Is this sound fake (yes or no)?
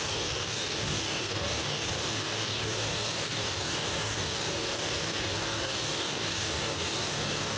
yes